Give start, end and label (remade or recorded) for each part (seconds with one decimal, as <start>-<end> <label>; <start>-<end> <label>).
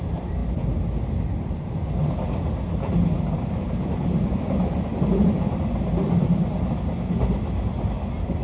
0.0-8.4 recorded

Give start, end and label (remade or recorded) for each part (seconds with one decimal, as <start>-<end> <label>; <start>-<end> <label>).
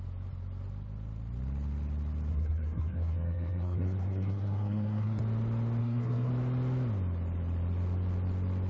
0.0-2.3 recorded; 2.3-5.2 remade; 5.2-5.8 recorded; 5.8-6.3 remade; 6.3-8.7 recorded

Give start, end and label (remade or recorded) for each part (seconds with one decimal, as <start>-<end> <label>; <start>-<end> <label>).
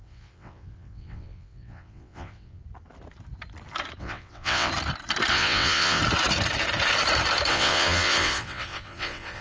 0.0-2.6 remade; 2.6-4.0 recorded; 4.0-4.7 remade; 4.7-5.3 recorded; 5.3-6.0 remade; 6.0-7.5 recorded; 7.5-9.4 remade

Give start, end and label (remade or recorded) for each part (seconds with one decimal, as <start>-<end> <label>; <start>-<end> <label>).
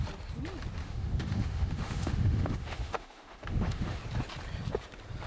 0.0-0.8 recorded; 0.8-4.0 remade; 4.0-5.3 recorded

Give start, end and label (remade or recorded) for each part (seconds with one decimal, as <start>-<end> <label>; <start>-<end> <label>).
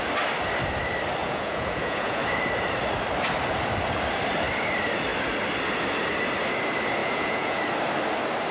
0.0-1.2 recorded; 1.2-2.2 remade; 2.2-7.0 recorded; 7.0-7.6 remade; 7.6-8.5 recorded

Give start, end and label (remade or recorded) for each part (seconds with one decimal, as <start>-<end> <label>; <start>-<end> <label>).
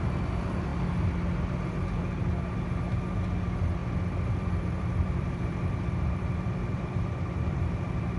0.0-3.8 recorded; 3.8-7.6 remade; 7.6-8.2 recorded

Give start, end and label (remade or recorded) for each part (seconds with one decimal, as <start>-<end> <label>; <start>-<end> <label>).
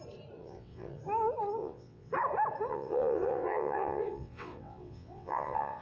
0.0-0.4 recorded; 0.4-1.0 remade; 1.0-1.6 recorded; 1.6-2.1 remade; 2.1-2.7 recorded; 2.7-5.8 remade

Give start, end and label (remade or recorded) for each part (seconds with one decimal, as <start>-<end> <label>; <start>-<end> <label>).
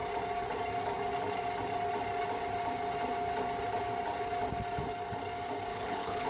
0.0-5.7 recorded; 5.7-6.3 remade